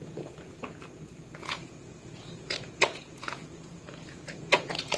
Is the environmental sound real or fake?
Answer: fake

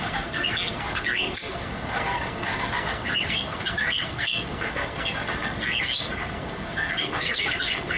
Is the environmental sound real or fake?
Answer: fake